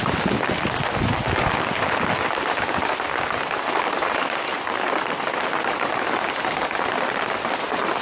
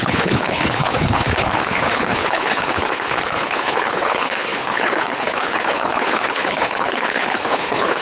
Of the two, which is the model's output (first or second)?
second